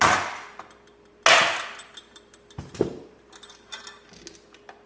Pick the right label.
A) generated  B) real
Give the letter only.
B